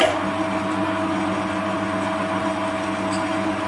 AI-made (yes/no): no